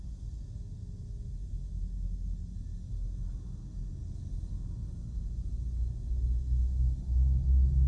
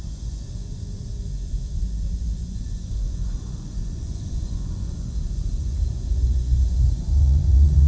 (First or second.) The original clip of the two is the first